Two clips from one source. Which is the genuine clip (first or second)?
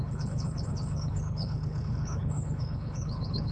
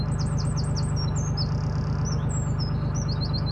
second